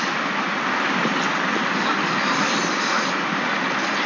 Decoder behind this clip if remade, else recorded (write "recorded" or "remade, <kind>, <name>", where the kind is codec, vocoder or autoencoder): recorded